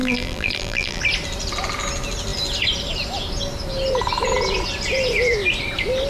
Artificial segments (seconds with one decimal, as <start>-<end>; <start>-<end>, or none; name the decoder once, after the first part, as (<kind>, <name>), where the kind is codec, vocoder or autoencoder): 0.0-1.0 (vocoder, BigVGAN v2)